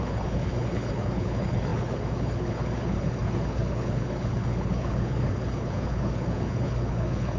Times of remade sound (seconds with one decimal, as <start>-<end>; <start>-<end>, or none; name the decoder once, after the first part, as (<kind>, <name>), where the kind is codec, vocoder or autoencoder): 0.0-7.4 (codec, HILCodec)